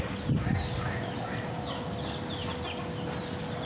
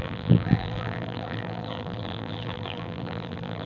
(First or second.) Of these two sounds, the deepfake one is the second